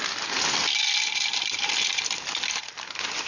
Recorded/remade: recorded